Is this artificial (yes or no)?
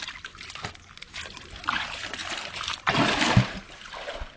no